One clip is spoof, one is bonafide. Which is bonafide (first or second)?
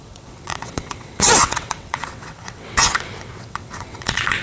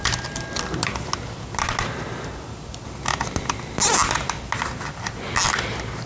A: second